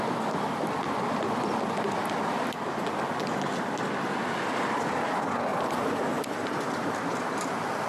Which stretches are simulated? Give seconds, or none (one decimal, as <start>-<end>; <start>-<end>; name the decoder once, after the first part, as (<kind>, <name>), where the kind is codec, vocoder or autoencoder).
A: 2.0-2.6 (vocoder, BigVGAN v2); 5.5-7.5